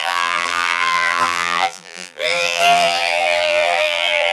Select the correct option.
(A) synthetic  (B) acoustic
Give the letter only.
A